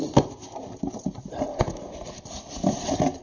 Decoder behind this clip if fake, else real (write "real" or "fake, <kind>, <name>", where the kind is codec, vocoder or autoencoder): real